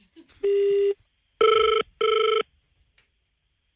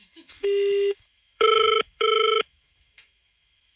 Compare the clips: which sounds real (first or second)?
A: first